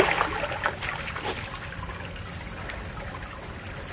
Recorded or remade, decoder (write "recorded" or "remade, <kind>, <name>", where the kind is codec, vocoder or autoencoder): recorded